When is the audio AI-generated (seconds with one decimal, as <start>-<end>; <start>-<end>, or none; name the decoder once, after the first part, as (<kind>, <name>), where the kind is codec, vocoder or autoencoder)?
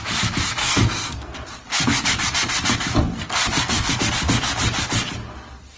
0.6-1.3 (codec, SNAC); 3.1-4.1